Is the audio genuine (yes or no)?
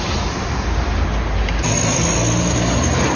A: yes